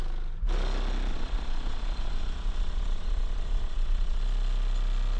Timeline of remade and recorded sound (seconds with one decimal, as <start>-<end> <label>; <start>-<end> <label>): 0.0-1.1 recorded; 1.1-4.2 remade; 4.2-5.2 recorded